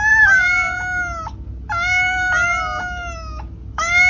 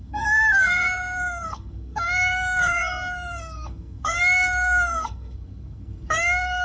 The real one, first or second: first